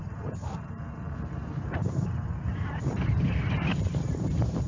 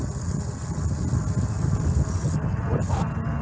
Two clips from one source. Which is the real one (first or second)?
second